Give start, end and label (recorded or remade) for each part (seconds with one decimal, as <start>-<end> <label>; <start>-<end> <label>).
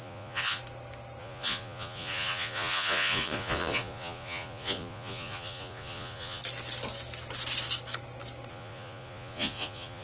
0.0-0.6 remade; 0.6-1.2 recorded; 1.2-6.4 remade; 6.4-8.5 recorded; 8.5-10.0 remade